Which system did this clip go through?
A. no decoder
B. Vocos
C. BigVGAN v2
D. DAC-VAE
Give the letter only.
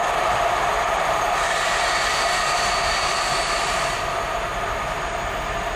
A